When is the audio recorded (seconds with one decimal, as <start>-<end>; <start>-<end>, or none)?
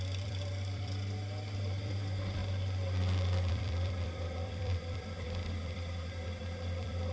2.4-3.5